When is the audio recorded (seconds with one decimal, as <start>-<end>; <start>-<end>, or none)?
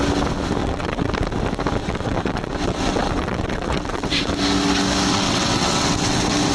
0.0-0.6; 1.1-1.8; 4.3-5.1